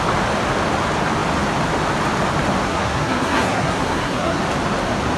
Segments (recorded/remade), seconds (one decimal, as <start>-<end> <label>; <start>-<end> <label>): 0.0-2.7 recorded; 2.7-4.4 remade; 4.4-5.2 recorded